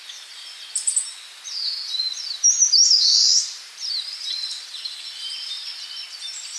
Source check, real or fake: fake